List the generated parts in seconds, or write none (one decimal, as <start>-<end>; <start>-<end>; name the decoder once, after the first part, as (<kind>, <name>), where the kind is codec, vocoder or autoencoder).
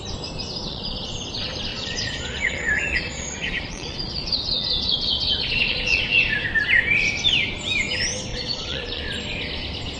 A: 0.6-1.1 (vocoder, Vocos); 1.7-6.0; 8.3-9.0